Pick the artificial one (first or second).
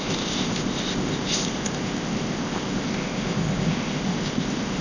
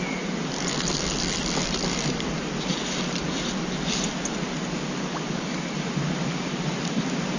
first